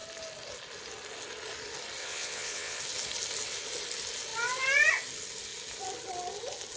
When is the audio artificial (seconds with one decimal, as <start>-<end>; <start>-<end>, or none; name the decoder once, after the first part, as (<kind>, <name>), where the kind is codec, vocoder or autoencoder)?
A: 2.0-2.8 (vocoder, WaveNeXt)